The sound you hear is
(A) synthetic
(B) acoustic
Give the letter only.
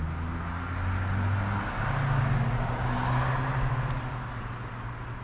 B